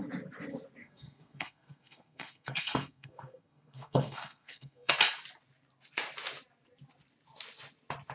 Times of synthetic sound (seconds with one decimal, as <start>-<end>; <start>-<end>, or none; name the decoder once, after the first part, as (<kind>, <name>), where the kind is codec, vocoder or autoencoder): 0.8-4.9 (codec, SNAC)